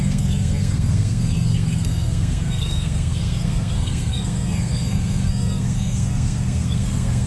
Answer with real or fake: fake